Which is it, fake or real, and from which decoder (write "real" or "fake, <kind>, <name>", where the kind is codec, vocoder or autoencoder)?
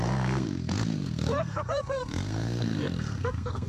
fake, codec, SNAC